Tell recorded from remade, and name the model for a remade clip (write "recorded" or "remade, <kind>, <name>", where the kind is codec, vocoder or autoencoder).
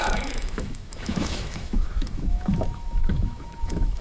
remade, autoencoder, DAC-VAE